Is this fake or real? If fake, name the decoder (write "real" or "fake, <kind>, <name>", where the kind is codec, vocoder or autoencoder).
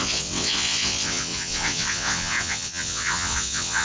fake, vocoder, WaveNeXt